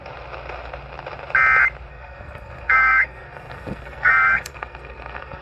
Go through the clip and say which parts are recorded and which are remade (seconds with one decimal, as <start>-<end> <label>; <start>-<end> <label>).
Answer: 0.0-1.9 recorded; 1.9-5.4 remade